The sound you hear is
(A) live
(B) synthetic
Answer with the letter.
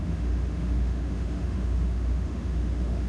B